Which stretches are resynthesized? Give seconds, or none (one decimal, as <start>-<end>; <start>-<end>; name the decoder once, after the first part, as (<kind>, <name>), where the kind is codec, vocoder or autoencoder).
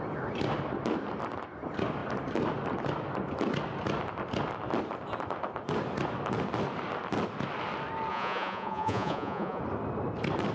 8.1-9.6 (vocoder, Vocos)